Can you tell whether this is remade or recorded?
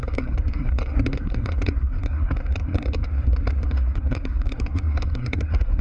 remade